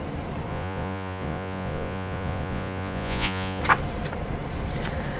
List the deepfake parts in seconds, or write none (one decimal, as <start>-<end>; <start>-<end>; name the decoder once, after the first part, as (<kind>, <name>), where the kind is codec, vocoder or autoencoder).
0.5-3.6 (vocoder, Vocos)